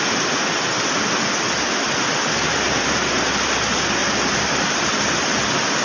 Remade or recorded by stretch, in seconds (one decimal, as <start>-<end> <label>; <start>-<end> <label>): 0.0-5.8 recorded